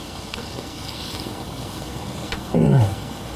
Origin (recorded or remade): remade